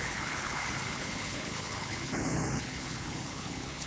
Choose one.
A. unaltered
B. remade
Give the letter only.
B